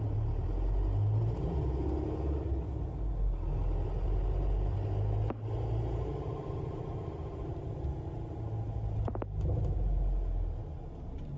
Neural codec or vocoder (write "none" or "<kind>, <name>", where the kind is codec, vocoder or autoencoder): none